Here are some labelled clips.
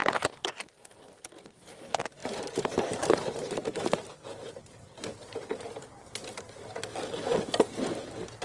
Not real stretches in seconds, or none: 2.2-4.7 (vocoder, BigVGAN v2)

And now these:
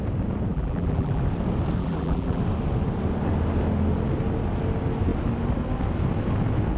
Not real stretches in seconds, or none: 0.5-1.2 (vocoder, BigVGAN v2); 1.8-2.4